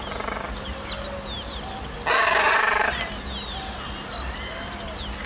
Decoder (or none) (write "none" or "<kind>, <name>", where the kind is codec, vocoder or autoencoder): none